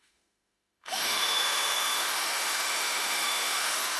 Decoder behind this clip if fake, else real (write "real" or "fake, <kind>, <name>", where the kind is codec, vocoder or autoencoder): fake, autoencoder, DAC-VAE